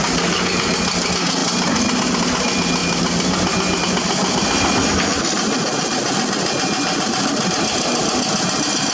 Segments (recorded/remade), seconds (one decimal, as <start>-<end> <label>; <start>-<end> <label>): 0.0-8.9 recorded